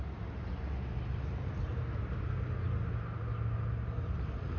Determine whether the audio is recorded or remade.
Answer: recorded